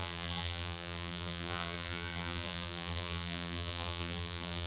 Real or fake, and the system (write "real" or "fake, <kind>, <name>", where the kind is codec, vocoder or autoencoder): fake, vocoder, BigVGAN v2